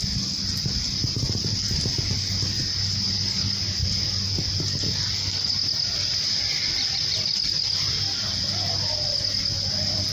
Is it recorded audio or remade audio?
recorded